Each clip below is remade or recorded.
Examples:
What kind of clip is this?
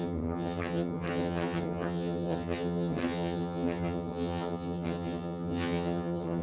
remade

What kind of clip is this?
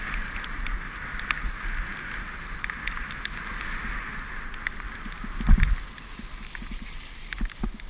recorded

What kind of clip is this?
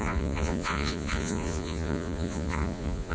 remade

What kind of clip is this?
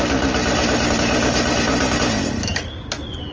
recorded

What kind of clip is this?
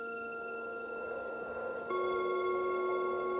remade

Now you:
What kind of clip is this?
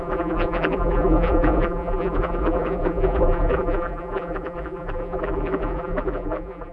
remade